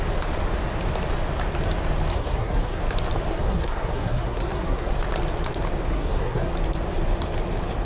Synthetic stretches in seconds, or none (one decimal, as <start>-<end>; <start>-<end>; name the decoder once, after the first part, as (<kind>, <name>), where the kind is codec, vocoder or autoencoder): 2.1-2.8 (codec, SNAC); 3.3-4.9; 5.9-6.5